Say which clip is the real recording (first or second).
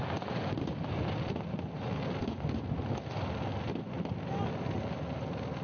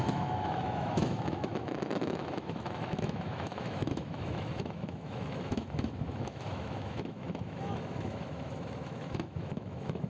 first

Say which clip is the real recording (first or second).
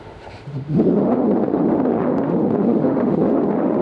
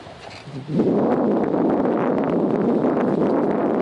second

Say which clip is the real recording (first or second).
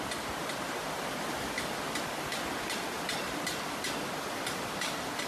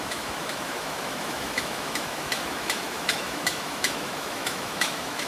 first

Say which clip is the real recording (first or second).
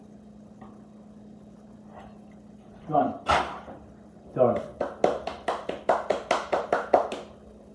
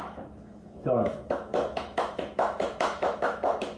first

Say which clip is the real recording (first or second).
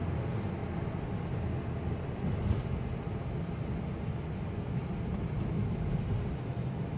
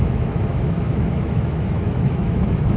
first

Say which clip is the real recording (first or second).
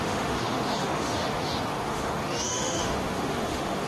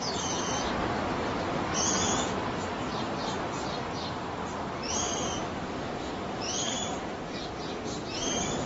second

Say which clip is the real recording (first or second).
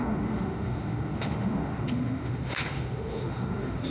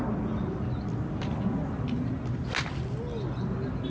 second